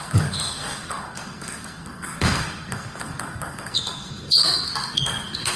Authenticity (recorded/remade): remade